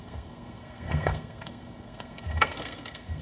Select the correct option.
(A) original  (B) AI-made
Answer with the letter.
B